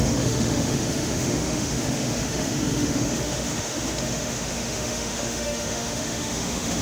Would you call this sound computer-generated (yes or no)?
yes